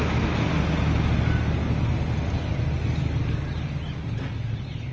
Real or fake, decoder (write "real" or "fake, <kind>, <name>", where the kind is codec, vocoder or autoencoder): real